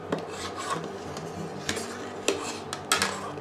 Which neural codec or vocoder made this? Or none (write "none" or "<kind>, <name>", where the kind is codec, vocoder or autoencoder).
none